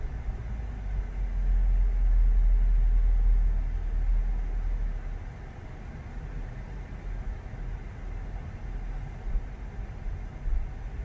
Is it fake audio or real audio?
real